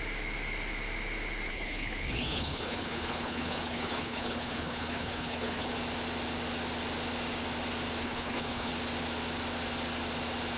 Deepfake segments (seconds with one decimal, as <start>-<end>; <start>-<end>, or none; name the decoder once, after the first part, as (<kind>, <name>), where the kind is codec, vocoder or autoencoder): 1.5-5.7 (codec, HILCodec); 8.0-8.7